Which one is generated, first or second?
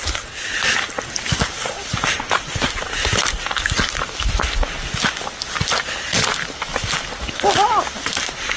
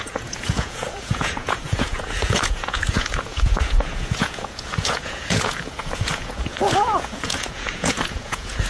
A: second